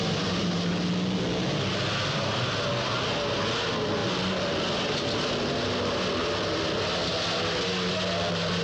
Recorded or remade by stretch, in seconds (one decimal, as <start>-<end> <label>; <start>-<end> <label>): 0.0-8.6 recorded